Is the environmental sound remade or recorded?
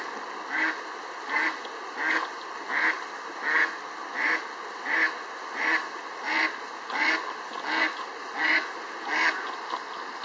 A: recorded